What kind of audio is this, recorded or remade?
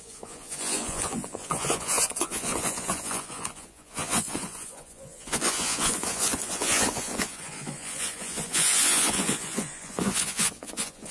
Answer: remade